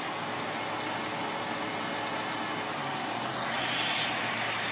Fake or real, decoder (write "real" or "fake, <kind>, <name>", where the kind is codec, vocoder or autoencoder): real